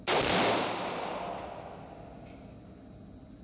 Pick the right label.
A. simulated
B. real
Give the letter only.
B